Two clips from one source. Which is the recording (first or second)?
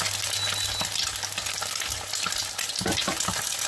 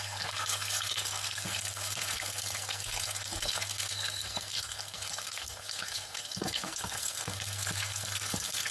first